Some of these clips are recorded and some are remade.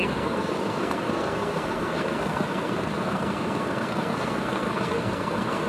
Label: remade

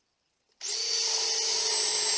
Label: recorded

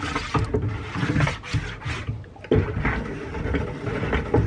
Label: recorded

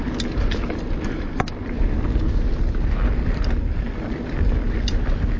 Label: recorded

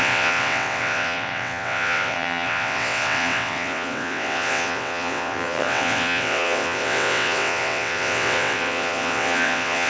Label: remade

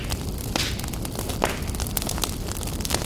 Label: recorded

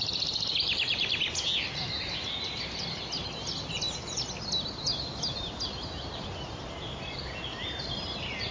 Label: remade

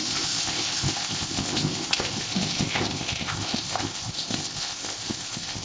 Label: remade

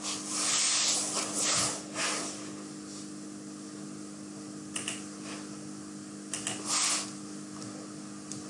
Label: recorded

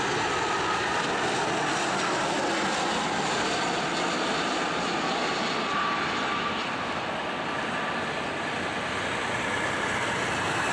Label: recorded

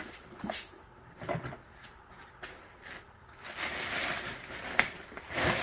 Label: recorded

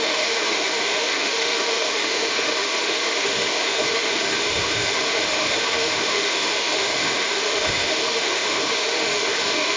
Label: remade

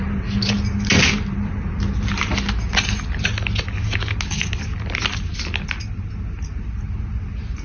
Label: recorded